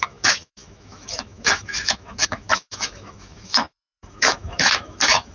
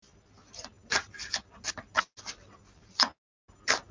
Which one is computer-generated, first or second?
first